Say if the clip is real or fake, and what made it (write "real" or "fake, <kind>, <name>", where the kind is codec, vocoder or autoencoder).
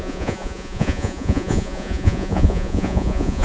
fake, vocoder, Vocos